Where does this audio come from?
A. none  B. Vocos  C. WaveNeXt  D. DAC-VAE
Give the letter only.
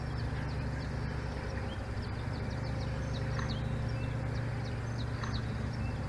A